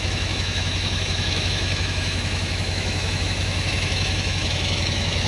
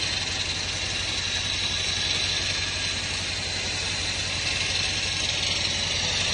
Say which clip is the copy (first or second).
first